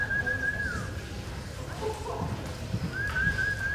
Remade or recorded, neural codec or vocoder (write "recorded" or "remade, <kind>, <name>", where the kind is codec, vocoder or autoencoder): recorded